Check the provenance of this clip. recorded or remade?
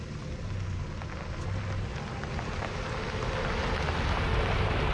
recorded